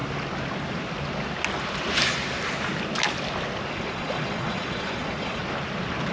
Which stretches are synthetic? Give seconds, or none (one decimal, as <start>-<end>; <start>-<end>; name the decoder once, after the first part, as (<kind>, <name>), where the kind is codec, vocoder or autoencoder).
3.7-5.4 (vocoder, Vocos)